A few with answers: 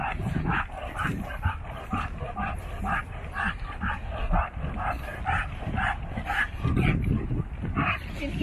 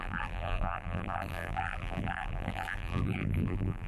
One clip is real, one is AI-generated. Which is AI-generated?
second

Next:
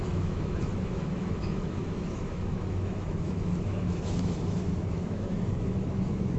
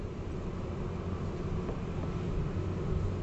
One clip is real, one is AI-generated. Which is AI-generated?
first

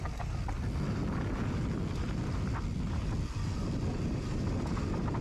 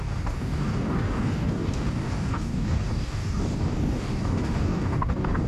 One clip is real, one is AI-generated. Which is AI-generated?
second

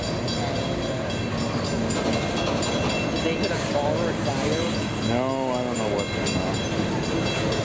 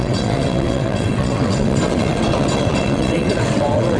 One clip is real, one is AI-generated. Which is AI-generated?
second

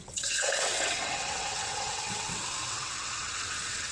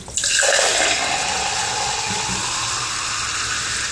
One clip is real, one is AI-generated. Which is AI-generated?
first